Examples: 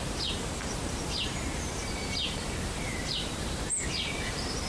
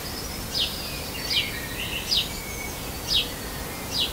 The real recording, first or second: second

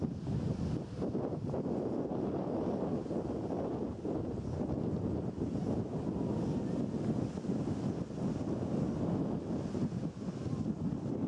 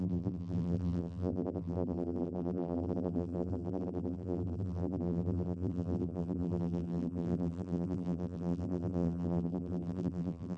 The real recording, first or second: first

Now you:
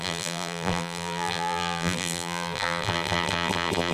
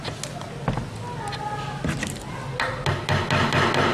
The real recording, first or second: second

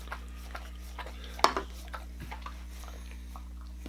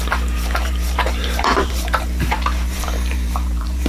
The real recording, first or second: first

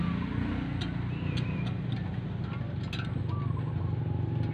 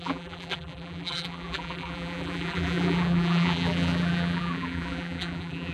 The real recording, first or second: first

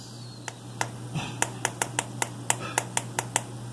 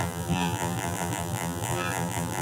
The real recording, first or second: first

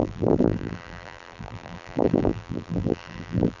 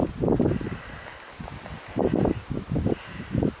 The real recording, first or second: second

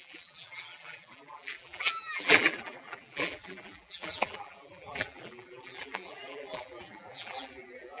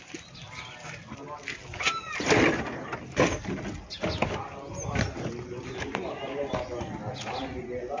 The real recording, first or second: second